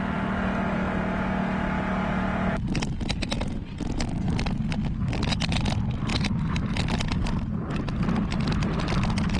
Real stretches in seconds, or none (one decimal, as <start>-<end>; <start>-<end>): 0.0-9.4